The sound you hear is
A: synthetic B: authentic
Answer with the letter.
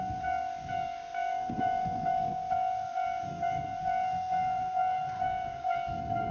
A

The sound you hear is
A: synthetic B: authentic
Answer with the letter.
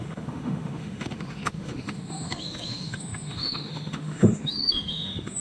A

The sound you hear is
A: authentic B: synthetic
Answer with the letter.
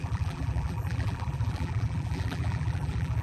B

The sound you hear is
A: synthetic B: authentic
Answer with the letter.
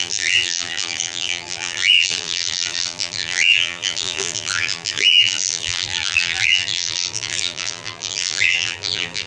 A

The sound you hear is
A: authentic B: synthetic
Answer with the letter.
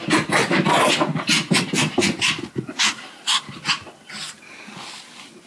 A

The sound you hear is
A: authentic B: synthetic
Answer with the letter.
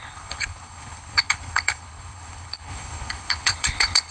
B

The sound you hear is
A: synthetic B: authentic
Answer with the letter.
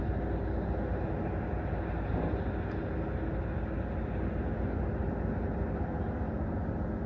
B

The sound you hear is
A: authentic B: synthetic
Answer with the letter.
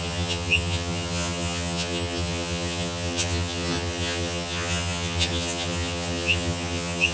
B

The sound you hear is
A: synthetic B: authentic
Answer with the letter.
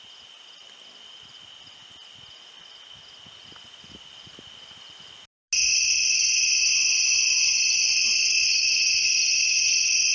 B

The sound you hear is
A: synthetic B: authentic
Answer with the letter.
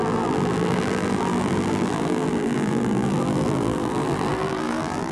A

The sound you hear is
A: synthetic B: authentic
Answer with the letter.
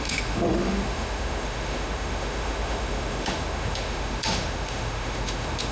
A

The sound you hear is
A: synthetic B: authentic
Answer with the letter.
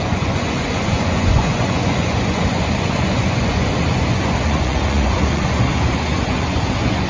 A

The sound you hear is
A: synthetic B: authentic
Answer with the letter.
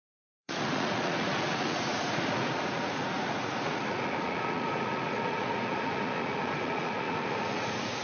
A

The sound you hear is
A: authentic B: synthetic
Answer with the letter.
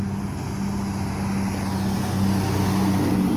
A